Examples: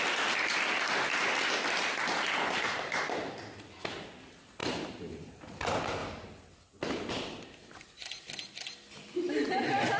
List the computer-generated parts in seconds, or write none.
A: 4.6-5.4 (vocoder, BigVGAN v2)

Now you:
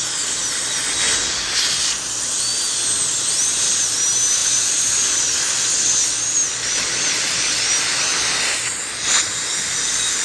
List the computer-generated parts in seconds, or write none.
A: 4.4-5.8 (vocoder, BigVGAN v2)